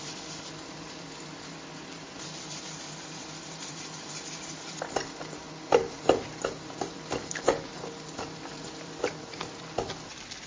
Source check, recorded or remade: remade